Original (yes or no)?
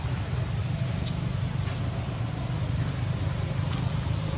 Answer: yes